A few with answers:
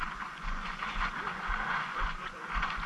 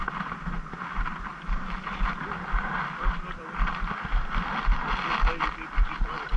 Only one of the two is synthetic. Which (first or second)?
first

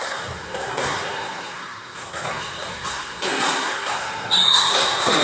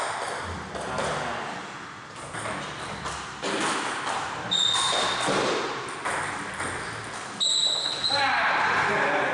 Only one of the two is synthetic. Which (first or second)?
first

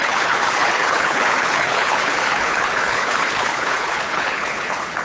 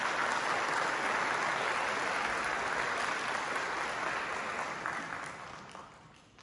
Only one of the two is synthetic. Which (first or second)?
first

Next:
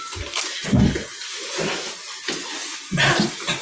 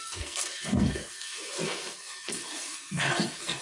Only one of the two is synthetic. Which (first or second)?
second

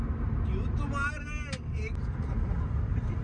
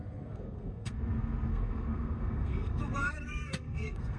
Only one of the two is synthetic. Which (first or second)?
second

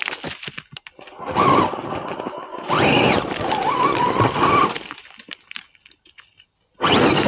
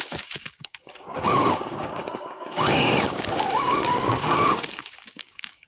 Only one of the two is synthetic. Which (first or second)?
second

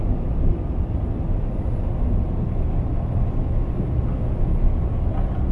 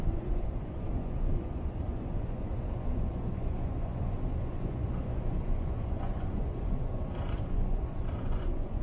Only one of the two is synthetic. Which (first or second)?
second